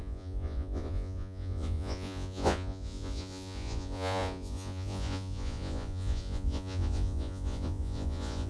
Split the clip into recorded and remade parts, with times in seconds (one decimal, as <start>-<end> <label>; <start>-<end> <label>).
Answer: 0.0-8.5 remade